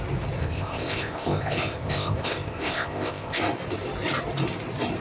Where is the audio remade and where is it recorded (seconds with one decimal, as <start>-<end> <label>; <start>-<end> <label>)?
0.0-0.4 recorded; 0.4-3.4 remade; 3.4-5.0 recorded